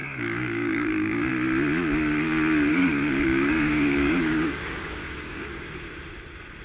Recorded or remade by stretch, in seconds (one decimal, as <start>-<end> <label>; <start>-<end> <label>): 0.0-1.3 remade; 1.3-2.7 recorded; 2.7-5.7 remade; 5.7-6.6 recorded